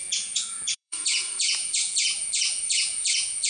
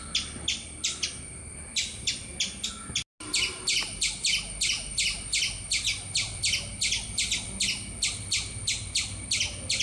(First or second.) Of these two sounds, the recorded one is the second